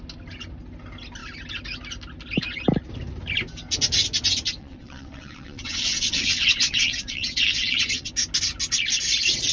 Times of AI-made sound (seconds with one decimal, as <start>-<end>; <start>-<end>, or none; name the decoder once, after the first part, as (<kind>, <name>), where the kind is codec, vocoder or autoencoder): 4.6-8.1 (vocoder, WaveNeXt)